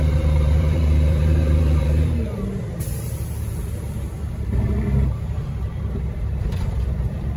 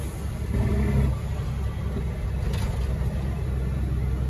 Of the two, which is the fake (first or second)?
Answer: first